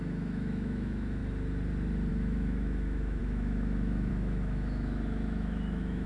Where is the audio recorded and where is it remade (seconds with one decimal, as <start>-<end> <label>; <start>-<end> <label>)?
0.0-1.2 remade; 1.2-2.1 recorded; 2.1-6.1 remade